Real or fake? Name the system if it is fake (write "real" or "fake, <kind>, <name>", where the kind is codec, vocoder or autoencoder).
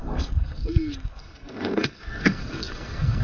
fake, codec, SNAC